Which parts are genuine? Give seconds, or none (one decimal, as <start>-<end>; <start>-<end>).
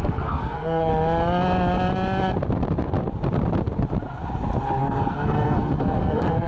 0.9-4.8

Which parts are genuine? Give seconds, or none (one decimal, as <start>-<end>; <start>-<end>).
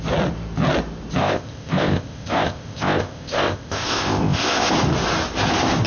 0.0-1.2; 4.7-5.9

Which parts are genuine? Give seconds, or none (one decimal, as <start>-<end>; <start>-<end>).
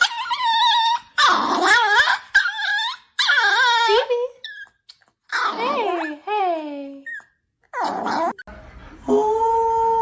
0.0-10.0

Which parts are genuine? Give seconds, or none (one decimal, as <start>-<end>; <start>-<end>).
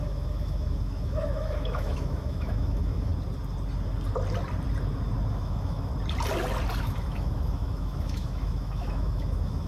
3.1-5.3; 5.9-6.8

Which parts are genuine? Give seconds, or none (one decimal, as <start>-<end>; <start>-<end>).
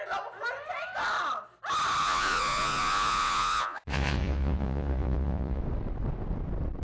0.0-2.0; 5.6-6.8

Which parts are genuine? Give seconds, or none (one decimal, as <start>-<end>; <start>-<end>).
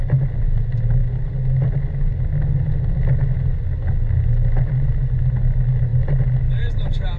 0.0-7.2